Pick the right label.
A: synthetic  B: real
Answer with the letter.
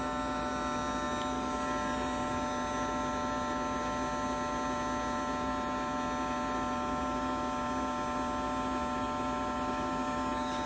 B